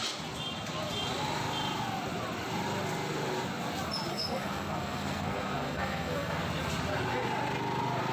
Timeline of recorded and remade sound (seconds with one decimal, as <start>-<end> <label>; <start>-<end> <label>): 0.0-4.1 recorded; 4.1-6.4 remade; 6.4-8.1 recorded